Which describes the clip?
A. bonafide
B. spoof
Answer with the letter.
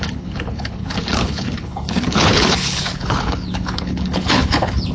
B